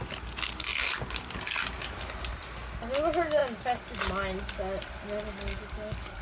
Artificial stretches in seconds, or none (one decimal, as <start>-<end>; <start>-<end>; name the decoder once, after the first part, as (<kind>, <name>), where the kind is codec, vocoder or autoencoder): 5.5-6.2 (codec, DAC)